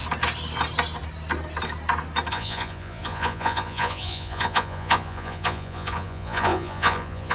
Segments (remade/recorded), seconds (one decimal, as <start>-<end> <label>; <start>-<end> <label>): 0.0-2.3 recorded; 2.3-7.3 remade